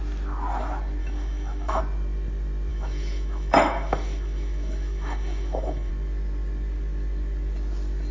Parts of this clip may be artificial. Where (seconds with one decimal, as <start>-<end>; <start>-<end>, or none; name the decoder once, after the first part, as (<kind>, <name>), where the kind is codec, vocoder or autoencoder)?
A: 1.0-1.8 (autoencoder, DAC-VAE); 2.7-5.9